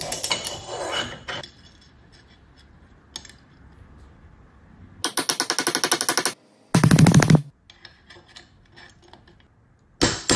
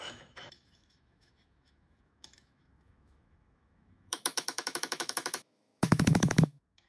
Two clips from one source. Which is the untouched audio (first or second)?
first